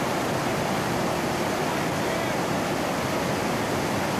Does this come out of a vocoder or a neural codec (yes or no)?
no